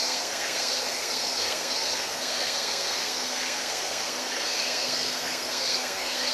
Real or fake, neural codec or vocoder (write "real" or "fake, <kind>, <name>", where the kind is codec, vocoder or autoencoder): fake, codec, SNAC